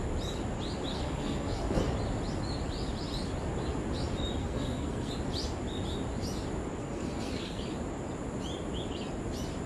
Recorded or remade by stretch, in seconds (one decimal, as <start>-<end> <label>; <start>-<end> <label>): 0.0-0.9 recorded; 0.9-1.8 remade; 1.8-4.4 recorded; 4.4-5.1 remade; 5.1-6.8 recorded; 6.8-7.6 remade; 7.6-9.7 recorded